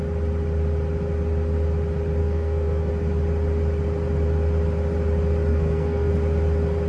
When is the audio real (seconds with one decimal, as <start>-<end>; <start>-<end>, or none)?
0.0-2.2; 2.9-5.5; 6.1-6.9